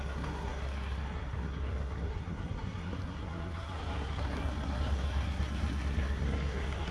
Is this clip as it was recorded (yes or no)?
no